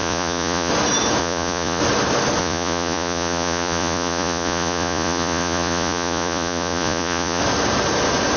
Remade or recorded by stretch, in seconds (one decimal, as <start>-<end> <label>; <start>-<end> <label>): 0.0-0.7 remade; 0.7-1.2 recorded; 1.2-1.8 remade; 1.8-2.4 recorded; 2.4-7.4 remade; 7.4-8.4 recorded